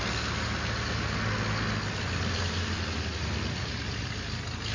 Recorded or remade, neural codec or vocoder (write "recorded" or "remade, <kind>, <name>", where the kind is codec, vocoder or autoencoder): recorded